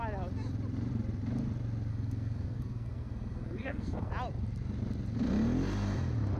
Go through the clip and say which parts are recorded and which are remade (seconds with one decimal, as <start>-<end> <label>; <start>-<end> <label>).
0.0-1.9 recorded; 1.9-4.1 remade; 4.1-6.4 recorded